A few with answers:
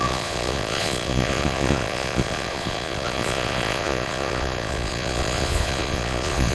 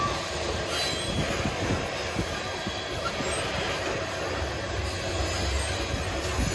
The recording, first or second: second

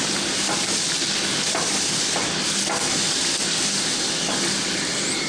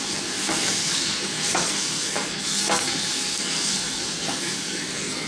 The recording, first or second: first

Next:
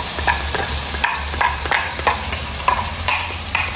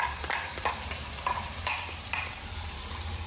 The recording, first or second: first